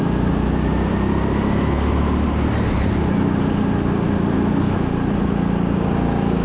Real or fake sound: real